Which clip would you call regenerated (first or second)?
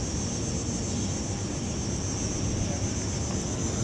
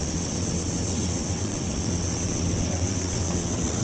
second